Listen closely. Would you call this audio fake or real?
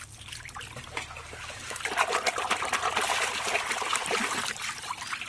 real